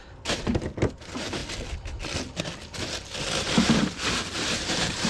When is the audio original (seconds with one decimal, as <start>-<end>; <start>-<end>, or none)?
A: 1.4-4.5